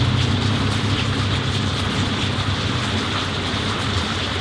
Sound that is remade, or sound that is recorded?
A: recorded